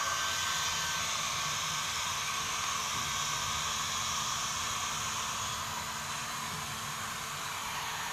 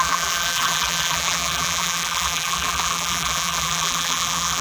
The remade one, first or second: second